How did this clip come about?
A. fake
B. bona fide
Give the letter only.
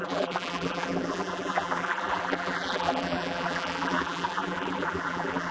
A